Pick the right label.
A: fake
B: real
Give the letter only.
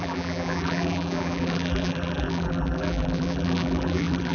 A